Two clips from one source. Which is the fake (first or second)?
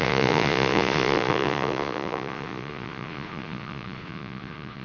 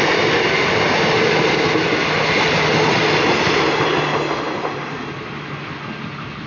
first